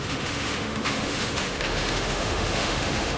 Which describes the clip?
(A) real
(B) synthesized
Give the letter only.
B